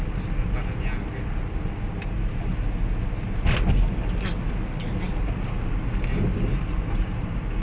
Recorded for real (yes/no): yes